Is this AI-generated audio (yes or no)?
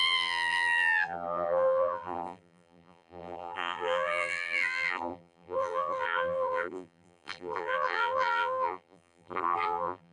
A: yes